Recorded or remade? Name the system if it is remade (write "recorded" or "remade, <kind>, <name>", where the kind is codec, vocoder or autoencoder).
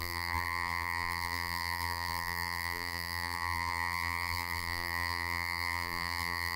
remade, vocoder, BigVGAN v2